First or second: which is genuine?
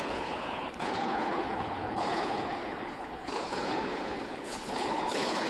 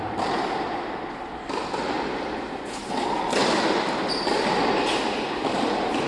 second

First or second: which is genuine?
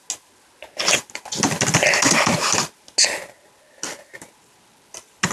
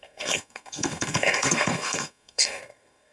first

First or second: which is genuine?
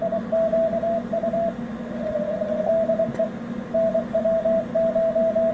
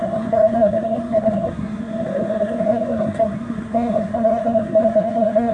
first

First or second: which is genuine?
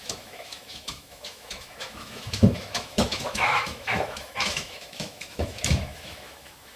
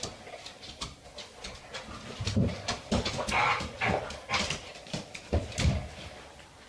second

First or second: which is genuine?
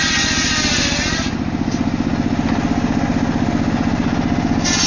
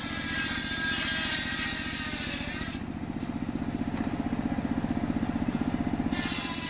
first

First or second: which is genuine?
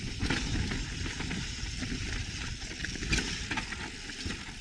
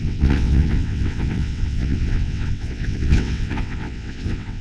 first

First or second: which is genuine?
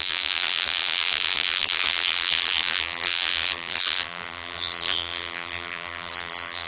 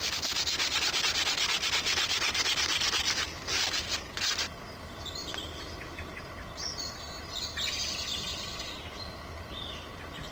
second